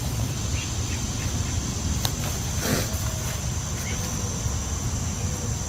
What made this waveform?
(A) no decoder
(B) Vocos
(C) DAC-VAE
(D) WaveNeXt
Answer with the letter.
A